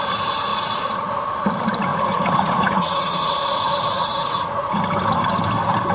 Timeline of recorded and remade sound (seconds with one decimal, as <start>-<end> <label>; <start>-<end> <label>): 0.0-0.5 recorded; 0.5-1.1 remade; 1.1-1.9 recorded; 1.9-4.8 remade; 4.8-5.9 recorded